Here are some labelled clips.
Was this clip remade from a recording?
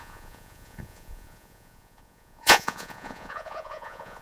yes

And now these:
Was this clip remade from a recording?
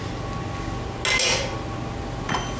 no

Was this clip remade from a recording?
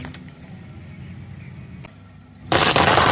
no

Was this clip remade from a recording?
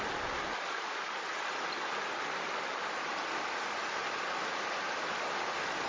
no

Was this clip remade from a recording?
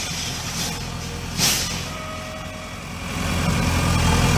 no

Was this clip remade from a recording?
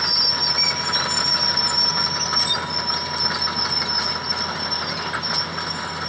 no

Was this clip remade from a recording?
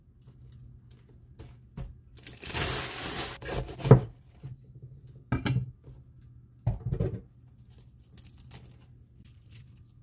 no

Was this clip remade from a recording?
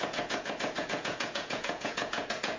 yes